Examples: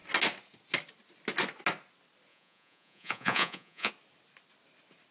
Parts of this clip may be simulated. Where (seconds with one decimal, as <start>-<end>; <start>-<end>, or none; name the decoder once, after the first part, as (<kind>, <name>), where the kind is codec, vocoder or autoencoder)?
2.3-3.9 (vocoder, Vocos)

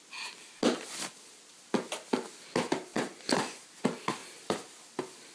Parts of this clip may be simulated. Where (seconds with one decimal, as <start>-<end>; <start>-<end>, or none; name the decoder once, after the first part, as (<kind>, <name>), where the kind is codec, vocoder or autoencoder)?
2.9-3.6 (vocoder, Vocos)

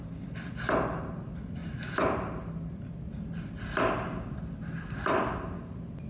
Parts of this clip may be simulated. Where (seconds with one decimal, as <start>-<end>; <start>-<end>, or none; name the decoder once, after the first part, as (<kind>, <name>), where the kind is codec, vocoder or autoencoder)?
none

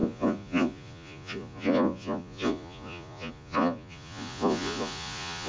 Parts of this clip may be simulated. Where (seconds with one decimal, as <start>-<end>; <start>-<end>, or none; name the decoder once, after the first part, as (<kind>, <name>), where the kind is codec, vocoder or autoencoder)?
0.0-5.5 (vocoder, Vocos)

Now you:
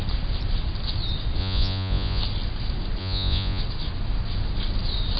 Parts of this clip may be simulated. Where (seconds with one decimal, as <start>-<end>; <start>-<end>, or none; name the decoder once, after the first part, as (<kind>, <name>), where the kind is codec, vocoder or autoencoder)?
1.4-2.2 (vocoder, Vocos); 3.0-3.6

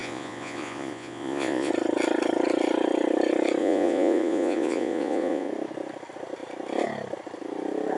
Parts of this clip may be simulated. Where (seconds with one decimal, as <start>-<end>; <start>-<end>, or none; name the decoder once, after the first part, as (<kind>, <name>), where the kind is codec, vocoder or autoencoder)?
0.0-1.7 (vocoder, Vocos); 3.6-5.5

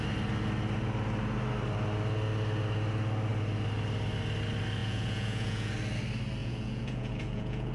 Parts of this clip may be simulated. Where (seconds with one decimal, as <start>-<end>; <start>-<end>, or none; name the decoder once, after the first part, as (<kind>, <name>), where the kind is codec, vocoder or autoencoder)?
4.8-5.7 (vocoder, Vocos); 6.4-7.7